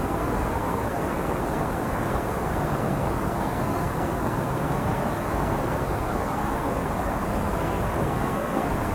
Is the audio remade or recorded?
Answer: remade